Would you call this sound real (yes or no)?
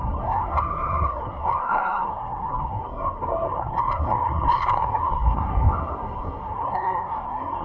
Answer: no